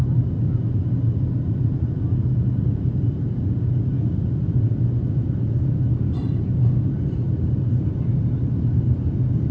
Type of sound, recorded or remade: recorded